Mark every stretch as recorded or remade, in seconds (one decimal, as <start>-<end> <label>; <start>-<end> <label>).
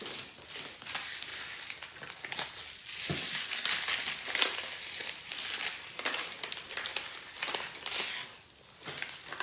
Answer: 0.0-6.9 recorded; 6.9-7.4 remade; 7.4-9.4 recorded